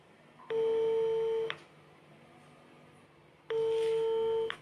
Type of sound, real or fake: real